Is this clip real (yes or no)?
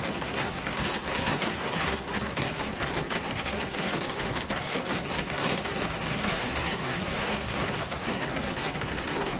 no